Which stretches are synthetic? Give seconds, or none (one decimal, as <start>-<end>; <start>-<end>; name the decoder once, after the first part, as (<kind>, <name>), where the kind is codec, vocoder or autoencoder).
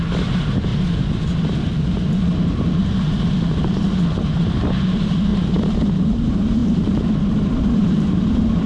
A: 0.0-0.7 (vocoder, BigVGAN v2); 4.3-5.3; 6.0-8.7